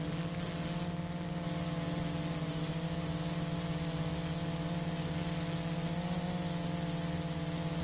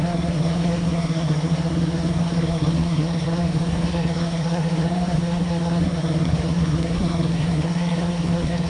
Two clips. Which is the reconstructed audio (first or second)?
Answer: second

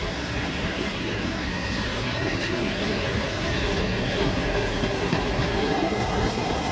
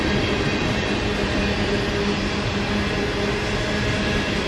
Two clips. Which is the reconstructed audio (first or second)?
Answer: first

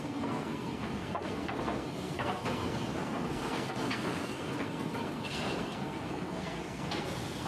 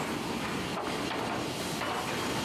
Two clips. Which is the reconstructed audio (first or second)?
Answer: first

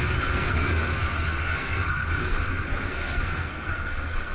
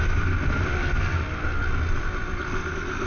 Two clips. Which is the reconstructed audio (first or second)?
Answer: first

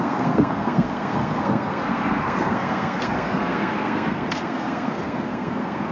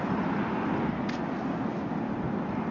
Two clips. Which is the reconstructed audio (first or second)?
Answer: first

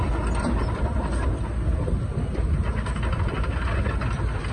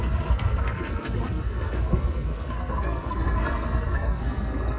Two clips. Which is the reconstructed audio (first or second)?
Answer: second